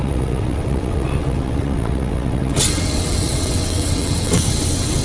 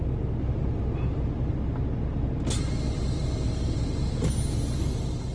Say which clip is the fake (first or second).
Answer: first